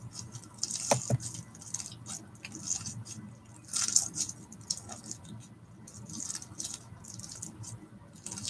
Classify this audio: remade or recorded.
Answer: recorded